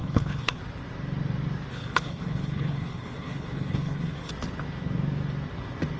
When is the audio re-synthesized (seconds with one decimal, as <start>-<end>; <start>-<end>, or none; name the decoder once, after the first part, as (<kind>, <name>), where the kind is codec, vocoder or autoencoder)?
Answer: 0.0-0.6 (codec, HILCodec); 1.7-4.3